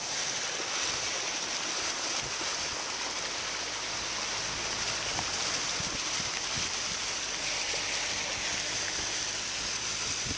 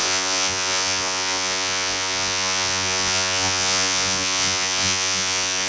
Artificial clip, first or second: second